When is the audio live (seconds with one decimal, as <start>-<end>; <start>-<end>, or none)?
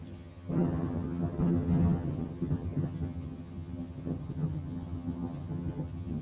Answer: none